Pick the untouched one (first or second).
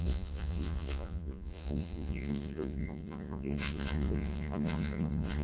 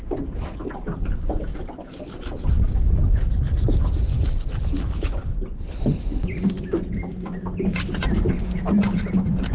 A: second